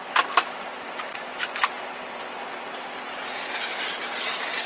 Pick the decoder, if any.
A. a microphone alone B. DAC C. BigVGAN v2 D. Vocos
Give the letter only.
C